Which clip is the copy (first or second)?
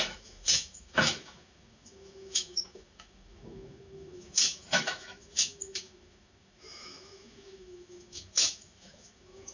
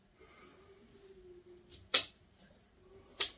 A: first